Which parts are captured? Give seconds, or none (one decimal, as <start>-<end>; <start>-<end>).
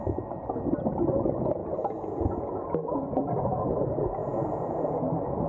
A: 0.0-1.6; 3.6-4.2; 4.9-5.5